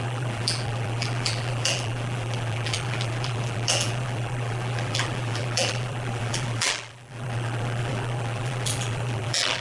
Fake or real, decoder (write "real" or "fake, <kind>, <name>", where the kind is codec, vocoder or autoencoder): fake, vocoder, BigVGAN v2